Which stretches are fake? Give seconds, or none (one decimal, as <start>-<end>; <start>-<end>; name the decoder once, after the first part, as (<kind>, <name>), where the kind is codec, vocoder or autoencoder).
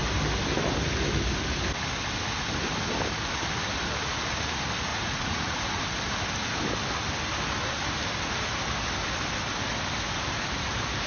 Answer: 4.9-5.8 (vocoder, Vocos)